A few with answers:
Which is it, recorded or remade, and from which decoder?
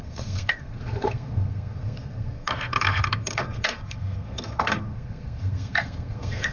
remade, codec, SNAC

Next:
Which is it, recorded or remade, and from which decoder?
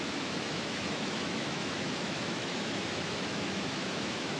remade, autoencoder, DAC-VAE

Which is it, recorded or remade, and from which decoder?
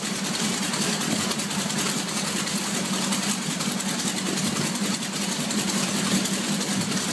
remade, vocoder, BigVGAN v2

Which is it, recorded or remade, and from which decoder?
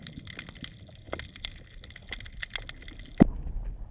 recorded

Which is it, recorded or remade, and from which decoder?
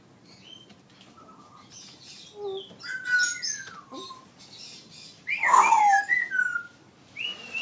recorded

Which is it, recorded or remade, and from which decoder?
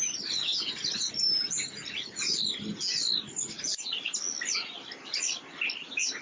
recorded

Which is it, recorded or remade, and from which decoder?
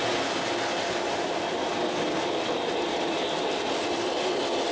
recorded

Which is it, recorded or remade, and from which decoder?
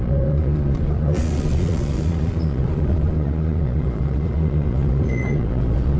remade, vocoder, Vocos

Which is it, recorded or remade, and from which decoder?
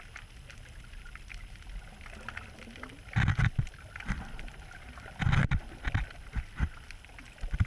recorded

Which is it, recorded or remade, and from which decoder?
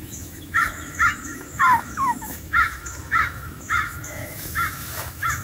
remade, autoencoder, DAC-VAE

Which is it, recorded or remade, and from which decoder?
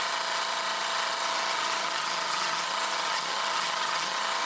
remade, vocoder, HiFi-GAN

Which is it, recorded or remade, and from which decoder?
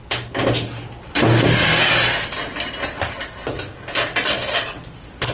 recorded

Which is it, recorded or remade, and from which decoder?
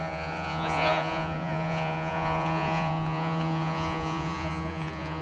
remade, vocoder, Vocos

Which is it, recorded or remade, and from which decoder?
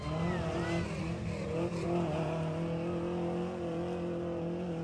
recorded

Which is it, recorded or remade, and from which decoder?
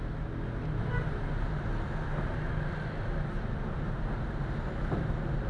recorded